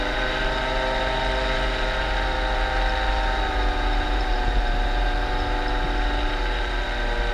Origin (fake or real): fake